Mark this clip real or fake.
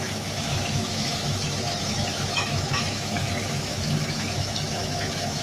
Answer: fake